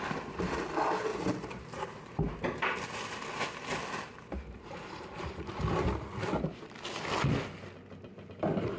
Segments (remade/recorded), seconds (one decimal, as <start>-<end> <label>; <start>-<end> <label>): 0.0-1.1 recorded; 1.1-2.9 remade; 2.9-4.1 recorded; 4.1-5.6 remade; 5.6-8.8 recorded